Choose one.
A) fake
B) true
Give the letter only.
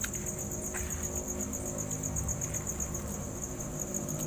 B